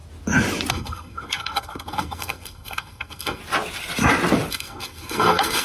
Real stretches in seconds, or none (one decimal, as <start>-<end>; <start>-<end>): 0.0-0.7; 3.4-4.5